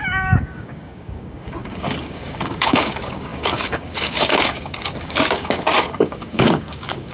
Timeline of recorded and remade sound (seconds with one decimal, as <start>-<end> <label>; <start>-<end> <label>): 0.0-7.1 remade